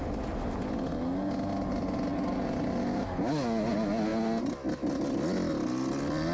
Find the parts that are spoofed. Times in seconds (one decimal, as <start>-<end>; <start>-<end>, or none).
none